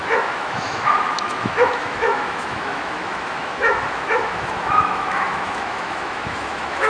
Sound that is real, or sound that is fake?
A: fake